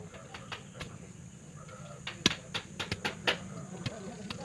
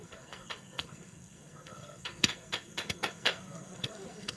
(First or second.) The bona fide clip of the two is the first